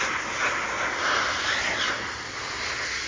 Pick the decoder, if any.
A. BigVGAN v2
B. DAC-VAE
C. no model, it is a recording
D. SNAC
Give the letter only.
C